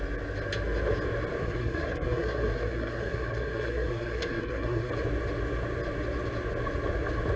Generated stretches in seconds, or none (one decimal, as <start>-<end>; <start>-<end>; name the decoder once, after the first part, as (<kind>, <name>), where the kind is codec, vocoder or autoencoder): 1.4-4.9 (codec, SNAC)